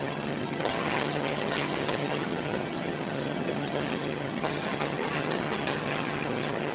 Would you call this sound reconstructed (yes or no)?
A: yes